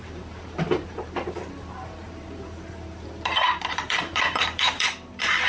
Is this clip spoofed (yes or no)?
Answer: yes